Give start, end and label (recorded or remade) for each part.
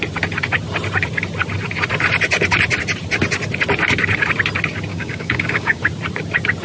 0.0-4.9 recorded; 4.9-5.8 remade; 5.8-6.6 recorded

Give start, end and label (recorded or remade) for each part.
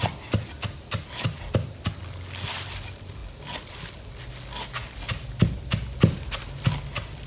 0.0-3.2 recorded; 3.2-3.9 remade; 3.9-7.3 recorded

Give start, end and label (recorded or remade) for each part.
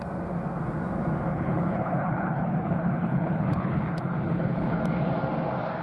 0.0-1.3 recorded; 1.3-4.8 remade; 4.8-5.8 recorded